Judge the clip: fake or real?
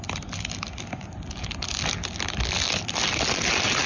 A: real